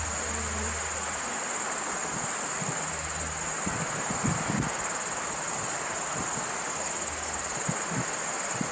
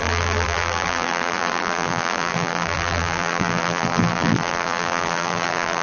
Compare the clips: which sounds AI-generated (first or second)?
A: second